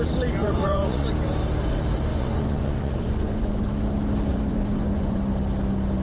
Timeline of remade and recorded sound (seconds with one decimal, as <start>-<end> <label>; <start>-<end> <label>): 0.0-0.4 recorded; 0.4-1.1 remade; 1.1-2.1 recorded; 2.1-3.7 remade; 3.7-4.3 recorded; 4.3-5.2 remade; 5.2-6.0 recorded